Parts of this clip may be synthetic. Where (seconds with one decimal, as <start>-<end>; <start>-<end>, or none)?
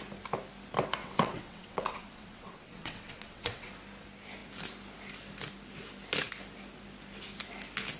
1.0-3.7